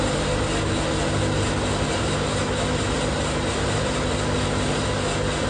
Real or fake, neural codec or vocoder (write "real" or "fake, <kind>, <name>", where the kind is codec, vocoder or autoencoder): real